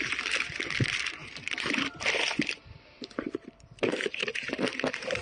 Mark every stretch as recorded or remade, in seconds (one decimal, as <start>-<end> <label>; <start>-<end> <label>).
0.0-5.2 remade